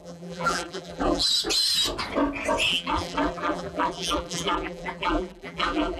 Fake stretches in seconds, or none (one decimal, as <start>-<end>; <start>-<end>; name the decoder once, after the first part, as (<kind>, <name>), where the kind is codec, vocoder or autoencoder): 0.0-1.2 (vocoder, BigVGAN v2); 2.7-6.0